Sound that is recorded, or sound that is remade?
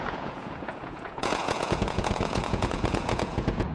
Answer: remade